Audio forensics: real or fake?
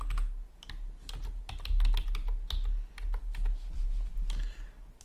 real